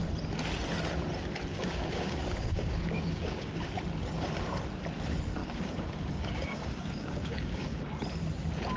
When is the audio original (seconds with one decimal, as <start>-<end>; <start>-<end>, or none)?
0.0-1.5; 3.7-5.4; 7.8-8.8